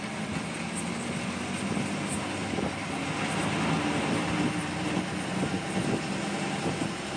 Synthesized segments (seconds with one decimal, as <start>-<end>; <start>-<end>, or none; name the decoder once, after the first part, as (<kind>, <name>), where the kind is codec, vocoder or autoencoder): none